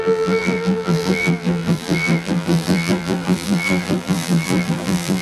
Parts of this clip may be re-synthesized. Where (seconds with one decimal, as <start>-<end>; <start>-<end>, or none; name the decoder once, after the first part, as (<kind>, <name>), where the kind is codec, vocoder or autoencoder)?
0.0-5.2 (vocoder, BigVGAN v2)